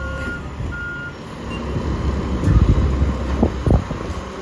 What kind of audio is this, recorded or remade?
recorded